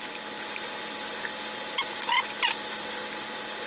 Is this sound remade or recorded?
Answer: recorded